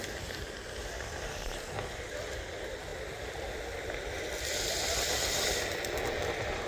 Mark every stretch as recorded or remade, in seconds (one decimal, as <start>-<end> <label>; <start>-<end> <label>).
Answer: 0.0-6.7 recorded